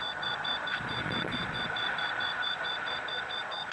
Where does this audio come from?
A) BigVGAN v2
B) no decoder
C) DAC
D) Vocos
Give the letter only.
D